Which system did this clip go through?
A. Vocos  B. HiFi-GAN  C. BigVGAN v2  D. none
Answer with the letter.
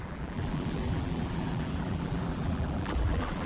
C